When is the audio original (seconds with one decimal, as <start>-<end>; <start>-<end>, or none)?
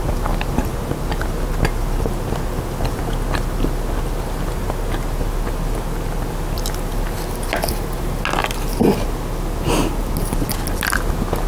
0.0-11.5